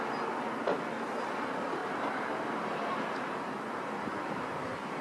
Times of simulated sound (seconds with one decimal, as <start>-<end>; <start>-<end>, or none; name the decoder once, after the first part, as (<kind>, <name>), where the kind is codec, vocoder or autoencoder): 1.8-5.0 (vocoder, BigVGAN v2)